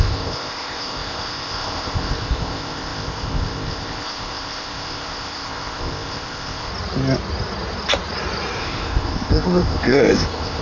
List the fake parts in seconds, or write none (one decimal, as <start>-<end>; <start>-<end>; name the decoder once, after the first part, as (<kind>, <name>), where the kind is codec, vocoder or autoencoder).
0.0-6.7 (codec, ZipCodec); 8.6-10.6